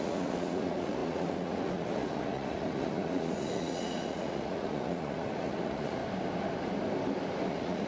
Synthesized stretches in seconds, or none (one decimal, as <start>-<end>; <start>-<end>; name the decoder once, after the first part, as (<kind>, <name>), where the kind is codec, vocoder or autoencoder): 0.0-6.0 (vocoder, Vocos); 7.5-7.9